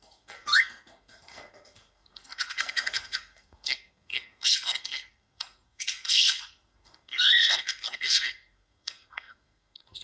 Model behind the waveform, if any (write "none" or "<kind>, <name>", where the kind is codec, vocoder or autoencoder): codec, SNAC